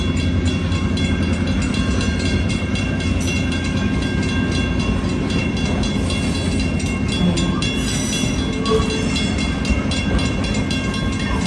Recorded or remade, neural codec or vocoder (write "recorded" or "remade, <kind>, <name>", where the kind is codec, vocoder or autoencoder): recorded